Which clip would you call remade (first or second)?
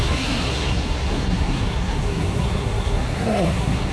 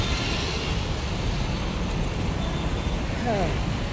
first